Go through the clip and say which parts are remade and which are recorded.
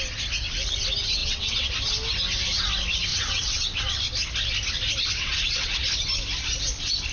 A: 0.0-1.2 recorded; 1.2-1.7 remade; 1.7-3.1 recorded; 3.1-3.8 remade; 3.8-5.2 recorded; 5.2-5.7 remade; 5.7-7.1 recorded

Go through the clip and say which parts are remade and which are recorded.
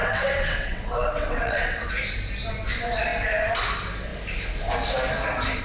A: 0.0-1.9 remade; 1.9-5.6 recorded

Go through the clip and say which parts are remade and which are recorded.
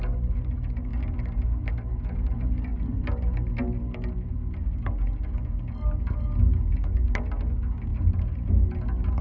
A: 0.0-9.2 recorded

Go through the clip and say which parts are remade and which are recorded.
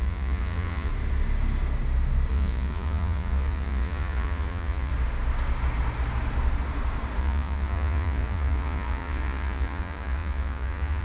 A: 0.0-0.9 remade; 0.9-2.3 recorded; 2.3-4.9 remade; 4.9-7.2 recorded; 7.2-11.0 remade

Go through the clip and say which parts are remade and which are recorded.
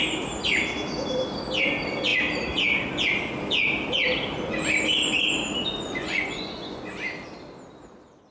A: 0.0-5.6 recorded; 5.6-6.9 remade; 6.9-8.3 recorded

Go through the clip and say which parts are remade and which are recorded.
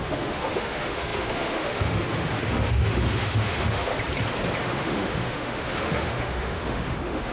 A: 0.0-3.9 remade; 3.9-4.6 recorded; 4.6-7.3 remade